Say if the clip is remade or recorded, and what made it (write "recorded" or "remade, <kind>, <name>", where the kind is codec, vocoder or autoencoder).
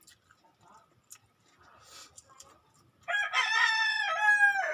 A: recorded